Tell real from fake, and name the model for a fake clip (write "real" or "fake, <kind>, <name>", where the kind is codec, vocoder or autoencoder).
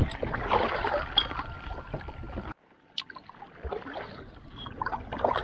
real